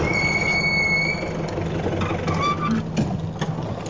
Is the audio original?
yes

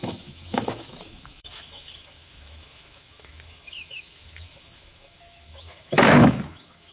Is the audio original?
no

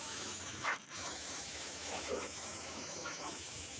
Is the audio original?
no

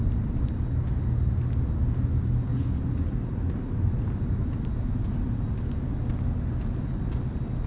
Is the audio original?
yes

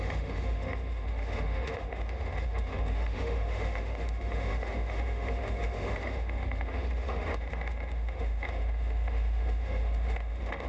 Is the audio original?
no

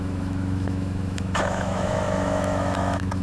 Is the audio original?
no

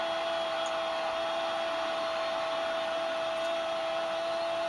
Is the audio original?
yes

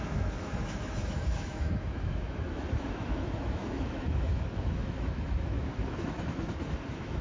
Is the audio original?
no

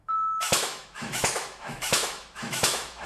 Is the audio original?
no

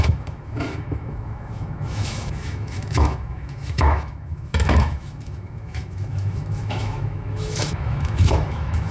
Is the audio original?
no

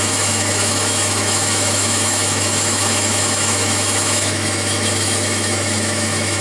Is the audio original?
no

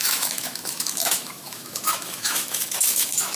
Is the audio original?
no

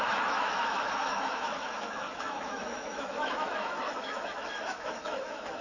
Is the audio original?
no